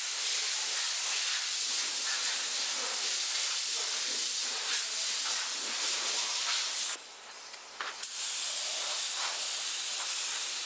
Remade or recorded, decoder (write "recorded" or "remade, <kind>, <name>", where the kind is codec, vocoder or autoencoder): recorded